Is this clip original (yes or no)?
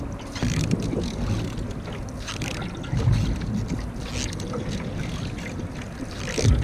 yes